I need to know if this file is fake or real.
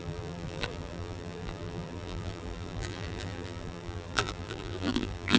fake